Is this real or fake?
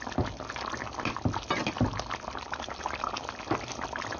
real